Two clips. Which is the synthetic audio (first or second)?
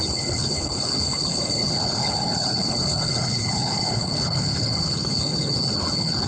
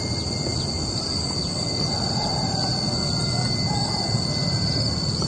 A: first